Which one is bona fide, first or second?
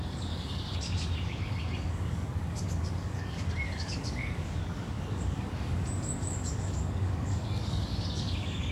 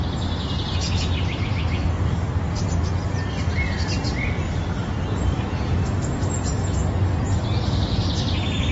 second